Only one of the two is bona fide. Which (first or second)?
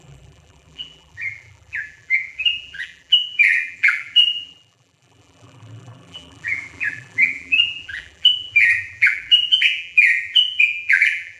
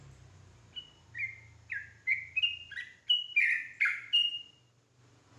second